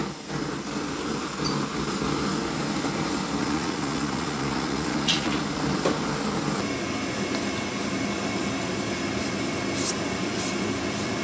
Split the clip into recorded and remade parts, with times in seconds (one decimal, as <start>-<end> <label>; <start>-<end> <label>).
0.0-3.4 recorded; 3.4-5.4 remade; 5.4-11.2 recorded